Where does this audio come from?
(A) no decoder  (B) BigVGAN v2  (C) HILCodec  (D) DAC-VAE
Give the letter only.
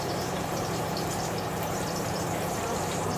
B